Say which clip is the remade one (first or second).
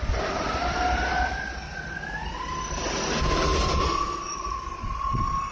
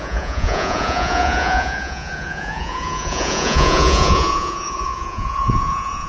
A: second